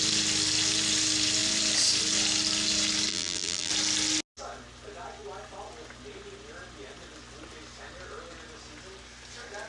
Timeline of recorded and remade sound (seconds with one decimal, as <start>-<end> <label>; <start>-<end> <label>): 0.0-3.1 recorded; 3.1-3.7 remade; 3.7-9.7 recorded